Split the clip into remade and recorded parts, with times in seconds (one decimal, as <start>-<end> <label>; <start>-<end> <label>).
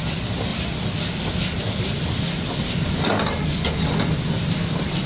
0.0-0.5 recorded; 0.5-1.3 remade; 1.3-5.1 recorded